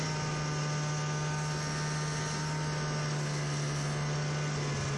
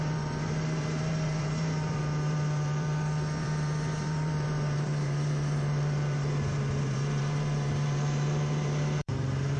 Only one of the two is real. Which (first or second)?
first